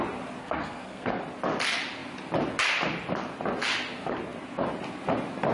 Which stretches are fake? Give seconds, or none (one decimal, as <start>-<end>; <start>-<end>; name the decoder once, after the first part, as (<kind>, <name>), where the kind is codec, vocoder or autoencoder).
0.4-1.2 (codec, SNAC)